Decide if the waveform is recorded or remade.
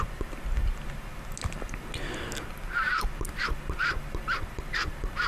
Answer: recorded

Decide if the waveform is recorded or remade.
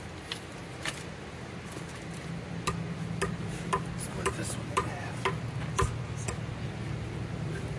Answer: recorded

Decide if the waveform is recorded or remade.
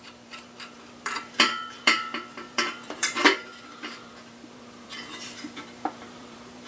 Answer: remade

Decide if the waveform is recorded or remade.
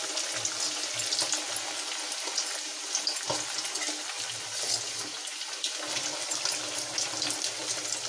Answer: recorded